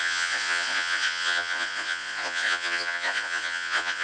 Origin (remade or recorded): remade